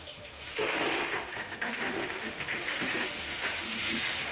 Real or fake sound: fake